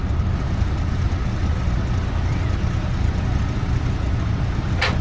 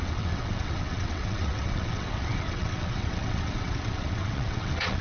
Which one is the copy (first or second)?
second